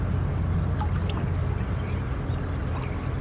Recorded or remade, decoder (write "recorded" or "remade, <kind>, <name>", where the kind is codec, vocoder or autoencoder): recorded